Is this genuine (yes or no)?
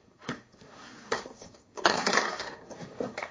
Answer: no